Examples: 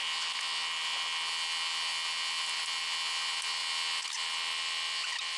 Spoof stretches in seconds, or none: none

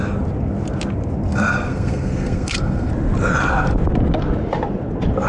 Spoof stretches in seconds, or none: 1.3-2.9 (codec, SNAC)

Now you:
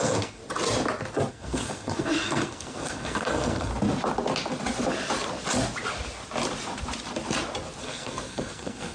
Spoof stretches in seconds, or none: 0.0-0.4 (codec, SNAC); 1.3-3.7; 7.8-8.9